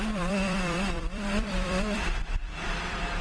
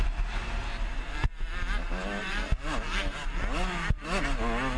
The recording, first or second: second